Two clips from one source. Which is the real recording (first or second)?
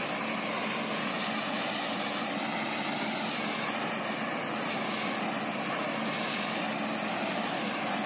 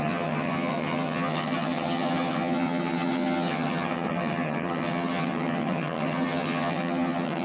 first